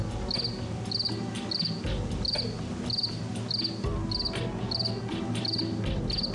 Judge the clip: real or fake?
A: real